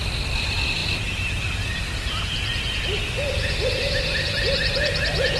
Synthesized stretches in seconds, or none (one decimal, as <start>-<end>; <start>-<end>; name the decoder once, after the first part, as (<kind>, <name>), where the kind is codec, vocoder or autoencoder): none